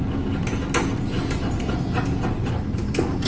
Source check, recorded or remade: recorded